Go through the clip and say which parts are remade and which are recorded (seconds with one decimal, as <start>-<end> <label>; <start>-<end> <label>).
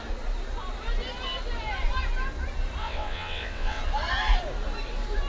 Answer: 0.0-2.8 recorded; 2.8-3.8 remade; 3.8-5.3 recorded